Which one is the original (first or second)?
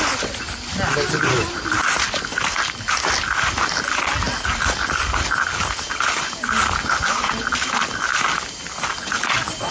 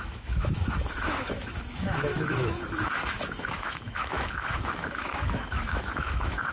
first